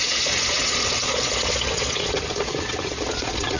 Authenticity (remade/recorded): remade